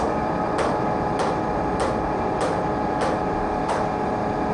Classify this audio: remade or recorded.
remade